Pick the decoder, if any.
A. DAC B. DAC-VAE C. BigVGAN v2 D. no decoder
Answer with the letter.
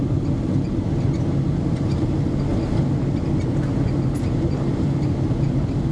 D